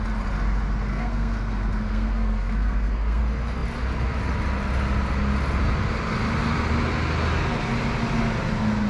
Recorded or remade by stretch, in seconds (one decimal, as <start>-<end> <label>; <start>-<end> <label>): 0.0-0.9 recorded; 0.9-3.2 remade; 3.2-8.9 recorded